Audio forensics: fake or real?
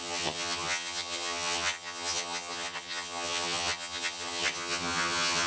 fake